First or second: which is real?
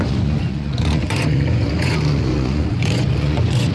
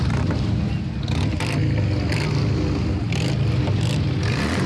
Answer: second